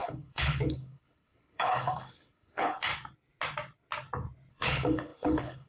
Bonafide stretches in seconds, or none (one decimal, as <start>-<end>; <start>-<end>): 2.9-4.5